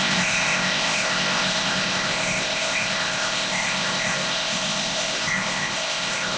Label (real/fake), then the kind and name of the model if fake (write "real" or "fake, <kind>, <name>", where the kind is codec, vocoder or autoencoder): fake, codec, ZipCodec